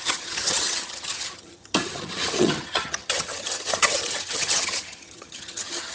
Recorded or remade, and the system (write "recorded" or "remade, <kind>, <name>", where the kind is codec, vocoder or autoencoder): remade, vocoder, HiFi-GAN